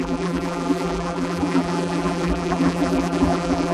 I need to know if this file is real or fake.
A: fake